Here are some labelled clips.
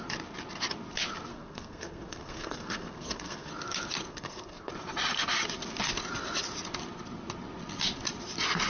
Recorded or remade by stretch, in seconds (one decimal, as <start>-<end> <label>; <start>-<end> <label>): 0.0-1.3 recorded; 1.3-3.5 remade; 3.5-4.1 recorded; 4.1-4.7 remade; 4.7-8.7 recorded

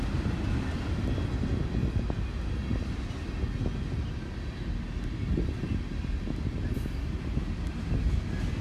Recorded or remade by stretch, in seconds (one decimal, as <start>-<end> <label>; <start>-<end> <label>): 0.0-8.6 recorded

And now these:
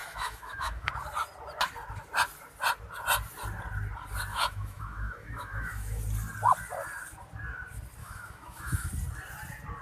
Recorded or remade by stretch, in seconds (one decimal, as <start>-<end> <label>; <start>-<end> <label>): 0.0-0.9 remade; 0.9-4.3 recorded; 4.3-6.0 remade; 6.0-8.0 recorded; 8.0-8.9 remade; 8.9-9.8 recorded